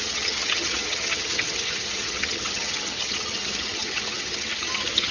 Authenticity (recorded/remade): remade